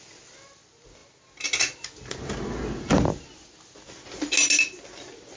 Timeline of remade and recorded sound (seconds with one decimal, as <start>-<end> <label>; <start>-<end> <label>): 0.0-5.4 recorded